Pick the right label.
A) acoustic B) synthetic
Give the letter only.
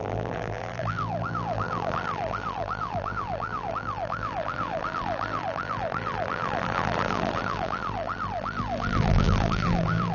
B